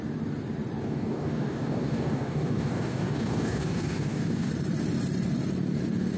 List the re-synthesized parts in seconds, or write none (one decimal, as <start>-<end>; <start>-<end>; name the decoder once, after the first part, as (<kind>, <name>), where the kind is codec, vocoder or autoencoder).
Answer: 0.8-4.5 (codec, DAC)